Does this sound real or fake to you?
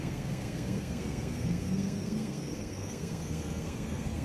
fake